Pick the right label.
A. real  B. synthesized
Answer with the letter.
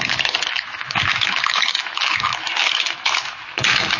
B